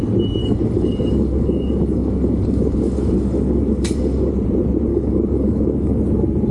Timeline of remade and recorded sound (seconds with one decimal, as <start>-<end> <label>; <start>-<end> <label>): 0.0-0.4 recorded; 0.4-4.3 remade; 4.3-4.9 recorded; 4.9-6.0 remade; 6.0-6.5 recorded